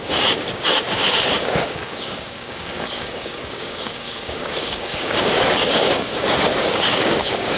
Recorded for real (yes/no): no